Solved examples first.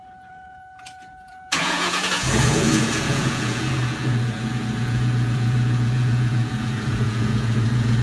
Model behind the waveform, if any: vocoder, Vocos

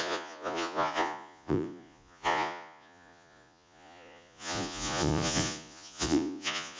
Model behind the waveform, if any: vocoder, Vocos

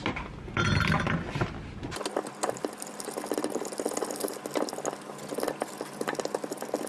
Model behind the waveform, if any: none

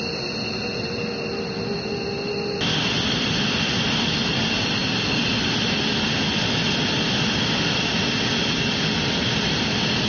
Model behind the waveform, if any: none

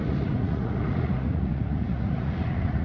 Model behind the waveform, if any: vocoder, Vocos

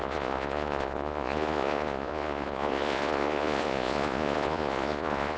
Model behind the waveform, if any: vocoder, Vocos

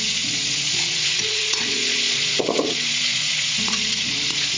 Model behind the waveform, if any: vocoder, Vocos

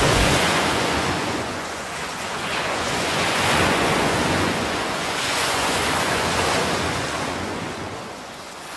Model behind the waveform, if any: vocoder, Vocos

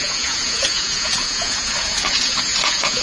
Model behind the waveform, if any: vocoder, Vocos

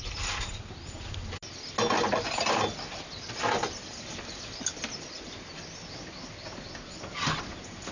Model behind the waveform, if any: none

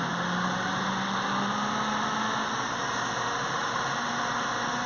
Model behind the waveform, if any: none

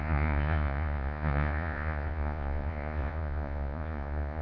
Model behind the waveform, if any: vocoder, Vocos